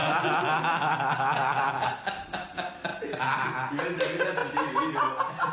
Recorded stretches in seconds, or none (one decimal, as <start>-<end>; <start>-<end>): 0.0-5.5